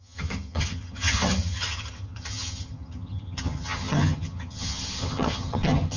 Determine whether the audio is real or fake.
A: fake